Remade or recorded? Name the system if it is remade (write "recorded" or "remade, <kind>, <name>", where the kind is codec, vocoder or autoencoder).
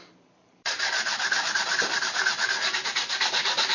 remade, vocoder, BigVGAN v2